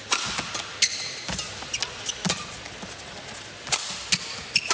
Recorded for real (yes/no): yes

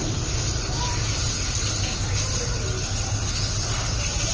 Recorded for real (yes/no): yes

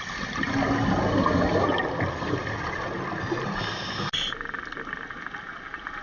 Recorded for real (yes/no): yes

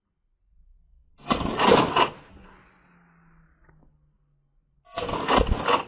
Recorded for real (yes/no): yes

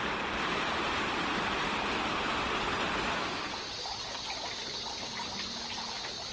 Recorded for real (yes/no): yes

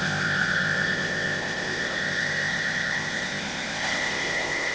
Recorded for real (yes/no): no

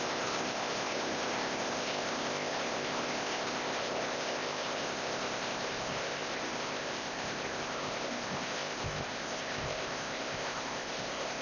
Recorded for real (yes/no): no